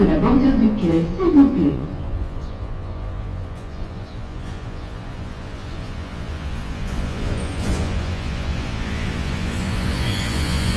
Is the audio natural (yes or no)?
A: no